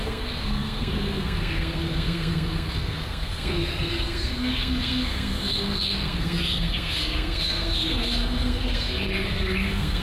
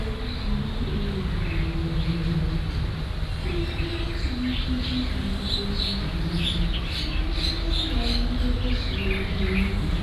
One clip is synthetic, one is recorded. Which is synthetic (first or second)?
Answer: first